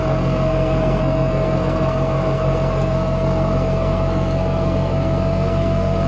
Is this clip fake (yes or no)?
yes